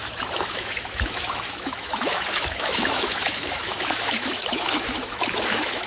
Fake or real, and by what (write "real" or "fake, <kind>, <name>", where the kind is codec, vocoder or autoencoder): fake, autoencoder, DAC-VAE